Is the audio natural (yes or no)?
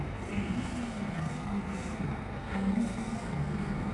no